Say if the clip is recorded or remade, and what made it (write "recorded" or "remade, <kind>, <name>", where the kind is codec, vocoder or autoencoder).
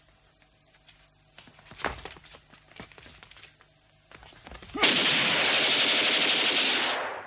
recorded